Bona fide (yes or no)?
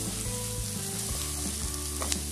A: yes